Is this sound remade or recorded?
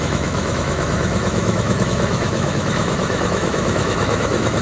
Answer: remade